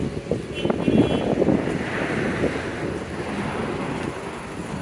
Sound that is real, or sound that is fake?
real